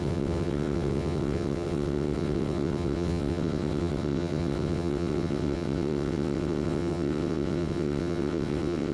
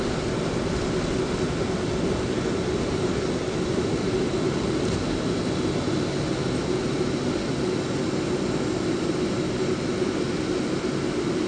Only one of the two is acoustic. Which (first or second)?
second